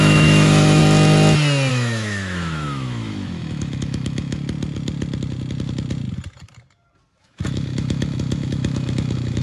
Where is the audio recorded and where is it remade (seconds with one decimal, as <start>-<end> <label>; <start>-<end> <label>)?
0.0-0.8 remade; 0.8-1.7 recorded; 1.7-4.4 remade; 4.4-7.2 recorded; 7.2-9.4 remade